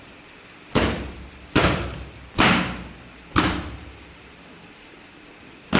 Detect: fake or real fake